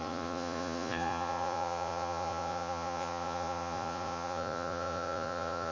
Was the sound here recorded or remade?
remade